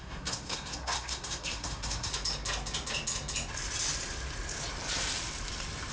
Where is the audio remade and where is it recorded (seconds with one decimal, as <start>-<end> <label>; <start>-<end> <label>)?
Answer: 0.0-2.1 remade; 2.1-5.9 recorded